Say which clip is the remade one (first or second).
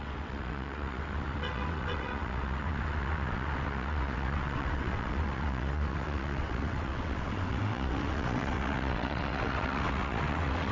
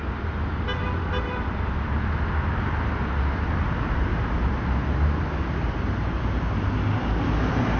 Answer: first